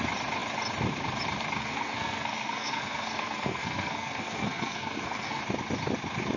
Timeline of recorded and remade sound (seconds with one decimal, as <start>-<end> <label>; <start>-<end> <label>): 0.0-1.6 recorded; 1.6-5.4 remade; 5.4-6.4 recorded